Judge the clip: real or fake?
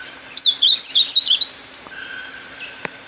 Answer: fake